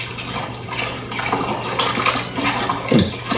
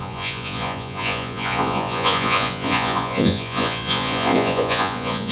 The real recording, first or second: first